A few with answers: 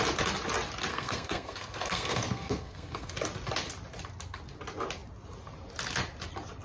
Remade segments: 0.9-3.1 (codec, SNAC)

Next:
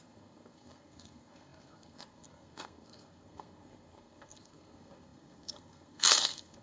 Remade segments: 0.0-6.6 (codec, SNAC)

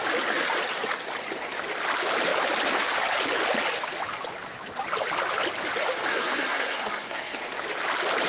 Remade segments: 6.1-7.4 (codec, SNAC)

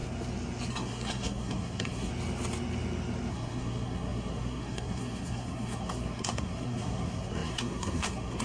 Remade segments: 0.7-2.1 (codec, SNAC); 3.3-8.4

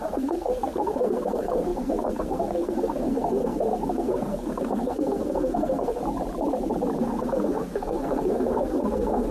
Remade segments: 0.0-6.0 (codec, SNAC); 7.0-9.3